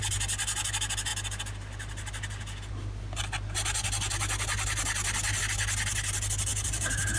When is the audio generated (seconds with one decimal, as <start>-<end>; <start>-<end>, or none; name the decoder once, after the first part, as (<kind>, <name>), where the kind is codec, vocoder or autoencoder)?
6.5-7.2 (vocoder, BigVGAN v2)